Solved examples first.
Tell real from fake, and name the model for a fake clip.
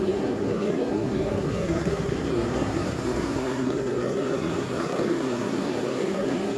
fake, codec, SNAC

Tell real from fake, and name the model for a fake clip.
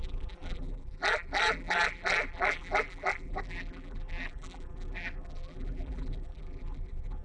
fake, vocoder, BigVGAN v2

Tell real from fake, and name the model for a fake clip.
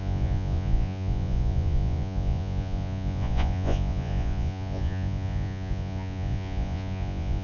fake, vocoder, Vocos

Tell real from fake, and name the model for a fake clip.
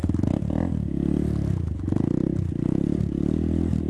real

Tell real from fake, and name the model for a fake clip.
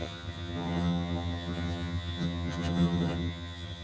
fake, vocoder, HiFi-GAN